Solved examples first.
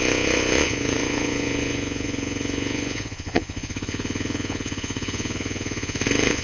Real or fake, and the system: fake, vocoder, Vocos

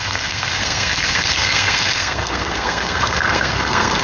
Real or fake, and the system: fake, codec, SNAC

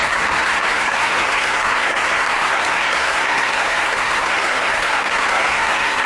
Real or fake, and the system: fake, codec, SNAC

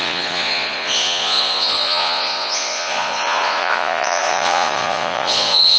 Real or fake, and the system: fake, vocoder, Vocos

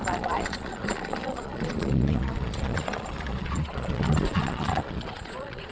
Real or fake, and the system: fake, vocoder, Vocos